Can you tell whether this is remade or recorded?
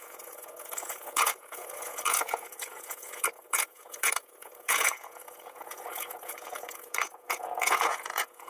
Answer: remade